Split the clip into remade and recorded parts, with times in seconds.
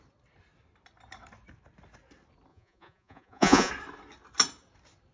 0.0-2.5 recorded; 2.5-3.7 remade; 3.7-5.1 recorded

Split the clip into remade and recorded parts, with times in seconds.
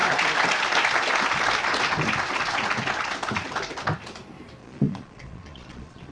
0.0-4.6 recorded; 4.6-6.1 remade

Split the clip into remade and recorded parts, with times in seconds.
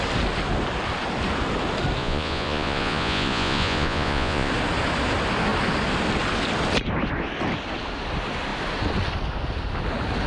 0.0-2.0 recorded; 2.0-4.5 remade; 4.5-10.3 recorded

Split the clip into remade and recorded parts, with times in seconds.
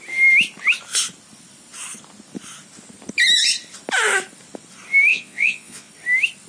0.0-5.1 recorded; 5.1-5.9 remade; 5.9-6.5 recorded